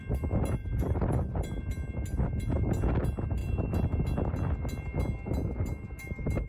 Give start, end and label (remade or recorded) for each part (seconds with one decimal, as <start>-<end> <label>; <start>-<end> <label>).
0.0-0.6 recorded; 0.6-1.6 remade; 1.6-6.5 recorded

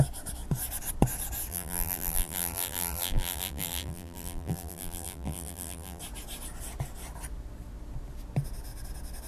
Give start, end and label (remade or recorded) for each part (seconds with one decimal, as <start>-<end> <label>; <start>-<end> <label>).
0.0-1.5 recorded; 1.5-6.0 remade; 6.0-9.3 recorded

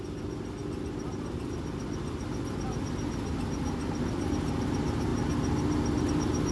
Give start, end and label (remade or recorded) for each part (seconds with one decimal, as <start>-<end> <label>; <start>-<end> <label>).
0.0-6.5 recorded